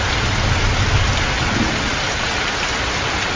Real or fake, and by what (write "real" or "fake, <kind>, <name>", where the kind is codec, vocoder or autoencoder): real